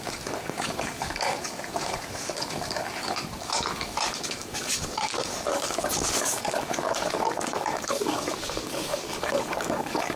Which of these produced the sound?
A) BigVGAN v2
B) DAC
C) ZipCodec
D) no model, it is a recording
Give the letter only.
B